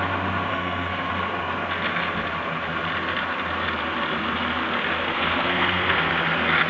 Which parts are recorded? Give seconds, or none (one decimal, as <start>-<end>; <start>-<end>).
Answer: 0.0-0.5; 1.1-5.1; 6.1-6.7